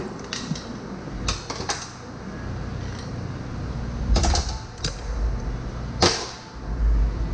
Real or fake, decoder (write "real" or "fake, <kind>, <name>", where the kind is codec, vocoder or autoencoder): real